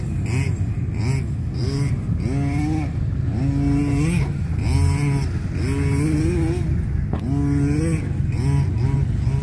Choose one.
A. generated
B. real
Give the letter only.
B